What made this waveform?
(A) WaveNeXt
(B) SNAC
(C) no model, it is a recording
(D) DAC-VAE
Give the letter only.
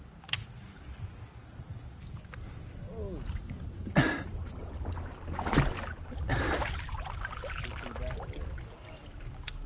C